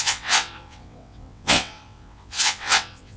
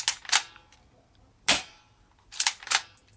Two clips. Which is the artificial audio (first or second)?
first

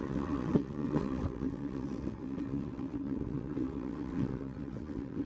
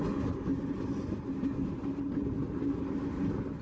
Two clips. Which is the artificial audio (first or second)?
first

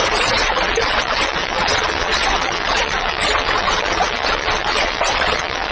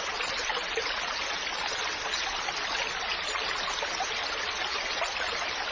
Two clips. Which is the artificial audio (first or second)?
first